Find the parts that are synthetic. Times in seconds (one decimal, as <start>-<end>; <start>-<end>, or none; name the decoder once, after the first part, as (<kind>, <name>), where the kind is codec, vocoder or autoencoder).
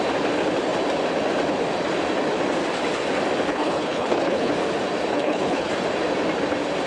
3.5-4.5 (codec, HILCodec); 5.1-5.7